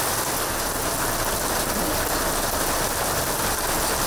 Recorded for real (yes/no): yes